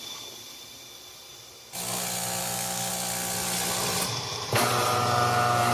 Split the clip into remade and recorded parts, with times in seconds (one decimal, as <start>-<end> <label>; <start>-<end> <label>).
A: 0.0-2.4 recorded; 2.4-2.9 remade; 2.9-5.7 recorded